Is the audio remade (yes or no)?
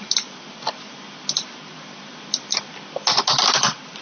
no